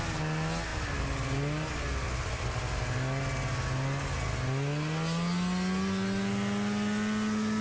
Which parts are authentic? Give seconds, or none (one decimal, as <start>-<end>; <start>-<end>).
0.0-7.6